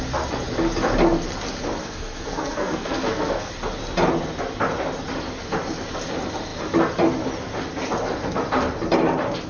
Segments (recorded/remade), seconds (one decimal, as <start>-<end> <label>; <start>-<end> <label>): 0.0-1.8 recorded; 1.8-3.5 remade; 3.5-9.5 recorded